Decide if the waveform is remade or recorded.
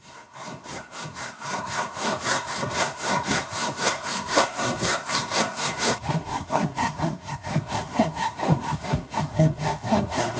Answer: remade